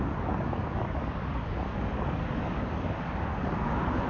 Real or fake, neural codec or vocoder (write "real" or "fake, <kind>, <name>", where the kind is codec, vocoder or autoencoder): fake, codec, DAC